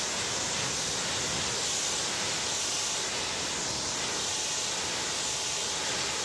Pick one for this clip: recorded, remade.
recorded